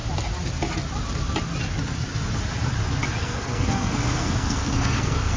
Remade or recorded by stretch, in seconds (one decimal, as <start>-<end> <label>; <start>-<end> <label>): 0.0-3.2 recorded; 3.2-5.4 remade